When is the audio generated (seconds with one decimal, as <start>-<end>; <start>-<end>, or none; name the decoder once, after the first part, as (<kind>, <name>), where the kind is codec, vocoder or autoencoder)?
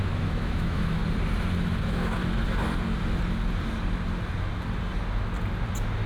0.0-1.0 (autoencoder, DAC-VAE); 1.8-2.2